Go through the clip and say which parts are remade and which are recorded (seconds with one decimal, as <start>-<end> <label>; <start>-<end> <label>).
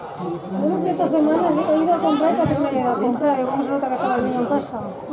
0.0-2.9 recorded; 2.9-3.6 remade; 3.6-5.1 recorded